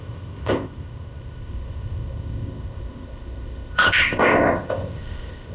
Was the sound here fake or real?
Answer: fake